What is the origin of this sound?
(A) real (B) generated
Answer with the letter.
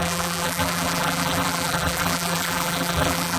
B